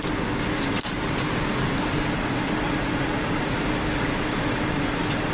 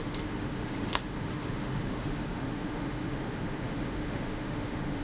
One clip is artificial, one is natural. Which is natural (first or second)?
first